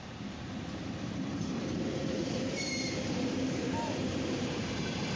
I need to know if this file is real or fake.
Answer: fake